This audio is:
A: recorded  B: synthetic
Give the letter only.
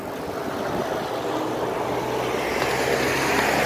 A